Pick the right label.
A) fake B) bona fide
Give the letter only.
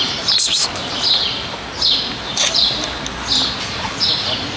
B